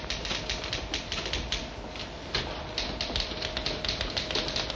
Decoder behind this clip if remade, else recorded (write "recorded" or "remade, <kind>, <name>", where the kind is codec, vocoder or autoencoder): recorded